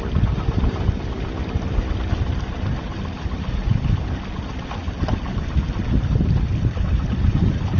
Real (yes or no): yes